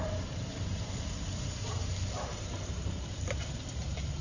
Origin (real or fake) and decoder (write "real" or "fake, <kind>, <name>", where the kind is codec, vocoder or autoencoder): fake, vocoder, BigVGAN v2